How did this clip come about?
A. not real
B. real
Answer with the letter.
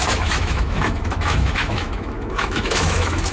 A